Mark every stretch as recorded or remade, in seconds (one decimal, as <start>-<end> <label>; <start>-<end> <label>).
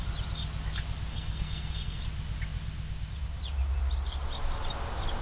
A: 0.0-1.1 recorded; 1.1-2.0 remade; 2.0-5.2 recorded